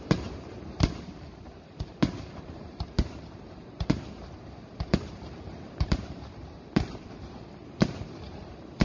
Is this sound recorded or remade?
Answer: remade